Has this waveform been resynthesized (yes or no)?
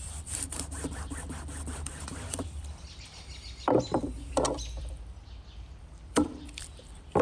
yes